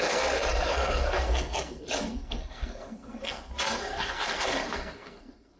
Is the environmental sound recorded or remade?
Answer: remade